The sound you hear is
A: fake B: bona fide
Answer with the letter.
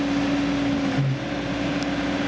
B